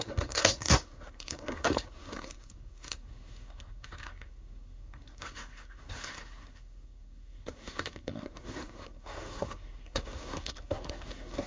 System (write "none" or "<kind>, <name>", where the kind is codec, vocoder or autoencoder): codec, SNAC